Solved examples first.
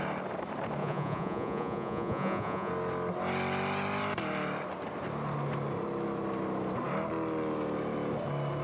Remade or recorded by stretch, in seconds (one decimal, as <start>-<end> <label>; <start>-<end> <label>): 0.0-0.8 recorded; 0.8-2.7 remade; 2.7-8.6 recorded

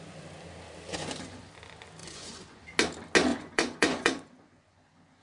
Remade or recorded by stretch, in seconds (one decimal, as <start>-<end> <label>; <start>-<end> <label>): 0.0-0.9 recorded; 0.9-1.5 remade; 1.5-2.0 recorded; 2.0-2.6 remade; 2.6-3.3 recorded; 3.3-5.2 remade

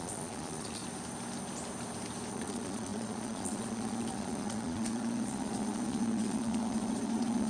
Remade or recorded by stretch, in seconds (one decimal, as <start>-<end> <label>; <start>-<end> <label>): 0.0-0.8 remade; 0.8-2.3 recorded; 2.3-7.5 remade

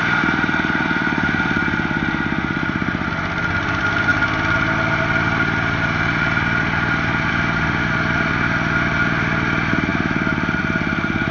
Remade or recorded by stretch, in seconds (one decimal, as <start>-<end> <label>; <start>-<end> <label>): 0.0-11.3 recorded

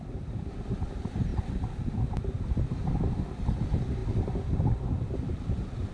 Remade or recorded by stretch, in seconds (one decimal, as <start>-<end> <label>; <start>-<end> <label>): 0.0-5.9 recorded

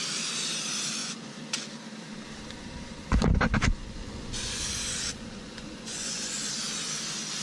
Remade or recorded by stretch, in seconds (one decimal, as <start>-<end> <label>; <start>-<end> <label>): 0.0-1.0 recorded; 1.0-1.7 remade; 1.7-3.8 recorded; 3.8-6.5 remade; 6.5-7.4 recorded